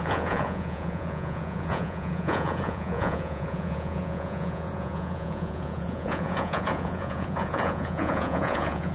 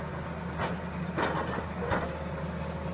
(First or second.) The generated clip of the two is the first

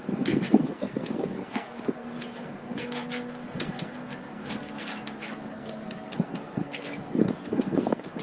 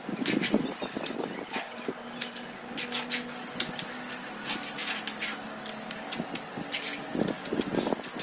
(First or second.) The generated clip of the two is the first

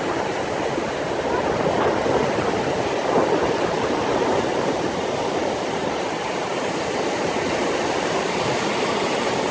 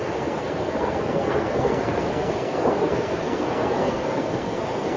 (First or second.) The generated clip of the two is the second